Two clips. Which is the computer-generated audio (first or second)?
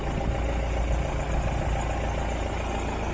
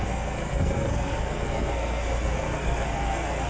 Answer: second